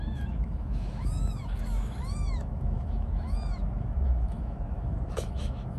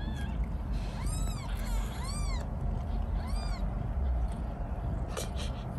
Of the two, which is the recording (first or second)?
second